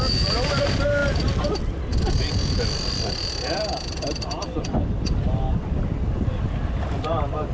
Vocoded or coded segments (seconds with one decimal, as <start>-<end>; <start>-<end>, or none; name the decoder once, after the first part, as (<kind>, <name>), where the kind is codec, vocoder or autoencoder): none